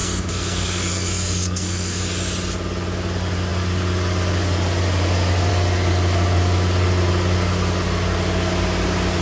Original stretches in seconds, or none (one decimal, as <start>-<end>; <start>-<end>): 2.0-9.2